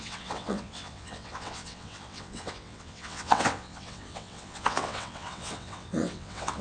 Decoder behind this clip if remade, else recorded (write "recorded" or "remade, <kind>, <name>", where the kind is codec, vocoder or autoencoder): remade, vocoder, WaveNeXt